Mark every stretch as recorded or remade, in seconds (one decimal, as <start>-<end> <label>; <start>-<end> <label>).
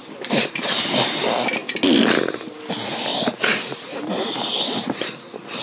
0.0-1.2 remade; 1.2-3.1 recorded; 3.1-4.4 remade; 4.4-5.6 recorded